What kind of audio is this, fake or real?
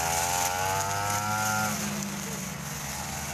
real